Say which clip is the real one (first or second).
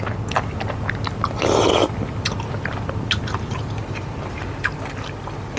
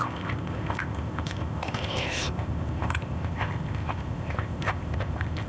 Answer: first